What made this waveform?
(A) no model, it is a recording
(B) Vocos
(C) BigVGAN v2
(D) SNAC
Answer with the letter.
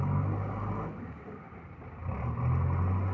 A